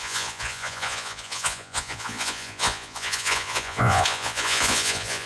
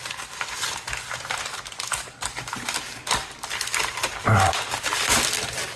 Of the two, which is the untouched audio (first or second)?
second